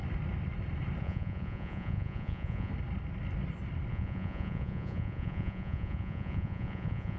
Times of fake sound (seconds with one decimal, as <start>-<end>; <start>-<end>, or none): 1.0-2.7; 3.9-7.2